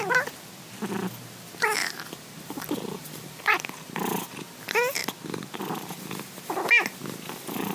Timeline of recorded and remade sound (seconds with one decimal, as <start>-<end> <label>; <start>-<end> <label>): 0.0-1.8 recorded; 1.8-4.0 remade; 4.0-7.7 recorded

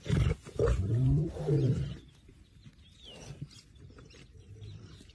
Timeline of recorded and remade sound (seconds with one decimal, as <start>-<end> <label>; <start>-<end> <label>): 0.0-0.9 recorded; 0.9-4.0 remade; 4.0-5.1 recorded

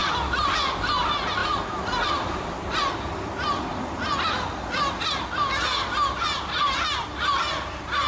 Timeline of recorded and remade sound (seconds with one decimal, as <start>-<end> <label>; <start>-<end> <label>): 0.0-0.9 remade; 0.9-8.1 recorded

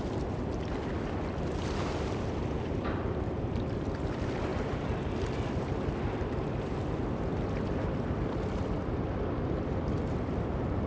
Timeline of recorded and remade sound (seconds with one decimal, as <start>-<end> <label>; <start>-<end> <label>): 0.0-10.9 remade

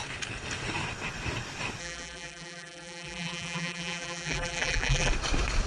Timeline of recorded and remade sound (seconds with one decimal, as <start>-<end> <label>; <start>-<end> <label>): 0.0-1.8 recorded; 1.8-5.1 remade; 5.1-5.7 recorded